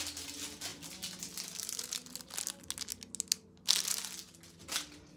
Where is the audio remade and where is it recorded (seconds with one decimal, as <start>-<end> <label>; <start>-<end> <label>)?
0.0-5.2 recorded